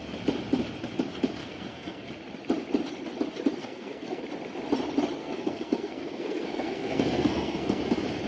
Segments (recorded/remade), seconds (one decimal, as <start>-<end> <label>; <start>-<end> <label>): 0.0-1.4 recorded; 1.4-2.1 remade; 2.1-3.6 recorded; 3.6-4.2 remade; 4.2-5.2 recorded; 5.2-7.8 remade; 7.8-8.3 recorded